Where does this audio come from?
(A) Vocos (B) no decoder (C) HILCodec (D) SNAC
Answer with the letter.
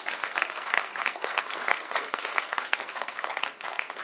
D